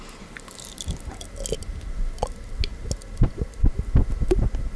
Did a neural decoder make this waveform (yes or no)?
no